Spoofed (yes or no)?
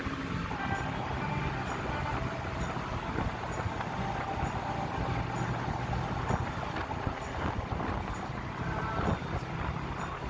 no